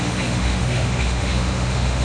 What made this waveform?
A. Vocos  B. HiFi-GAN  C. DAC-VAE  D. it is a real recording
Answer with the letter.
C